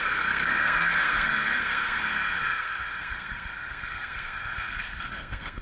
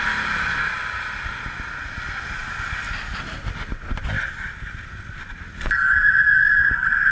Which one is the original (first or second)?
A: second